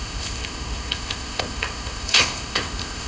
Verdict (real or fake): fake